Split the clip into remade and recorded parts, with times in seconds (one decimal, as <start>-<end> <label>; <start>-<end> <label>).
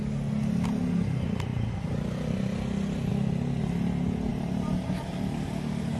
0.0-4.3 recorded; 4.3-5.1 remade; 5.1-6.0 recorded